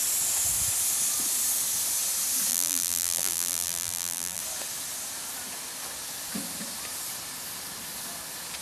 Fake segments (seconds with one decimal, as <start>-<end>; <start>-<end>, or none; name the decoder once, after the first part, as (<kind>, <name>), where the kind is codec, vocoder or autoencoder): 2.5-4.4 (vocoder, BigVGAN v2)